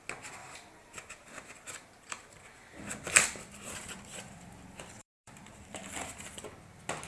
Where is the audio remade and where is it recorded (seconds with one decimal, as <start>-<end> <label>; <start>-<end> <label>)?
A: 0.0-0.4 recorded; 0.4-4.4 remade; 4.4-5.0 recorded; 5.0-6.3 remade; 6.3-7.1 recorded